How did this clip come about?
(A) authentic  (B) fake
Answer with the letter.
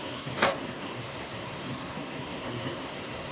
B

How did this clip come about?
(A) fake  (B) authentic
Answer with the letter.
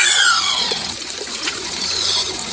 A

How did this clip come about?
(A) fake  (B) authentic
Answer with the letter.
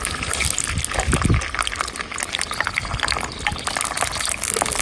B